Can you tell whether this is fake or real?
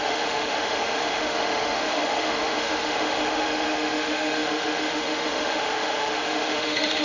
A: fake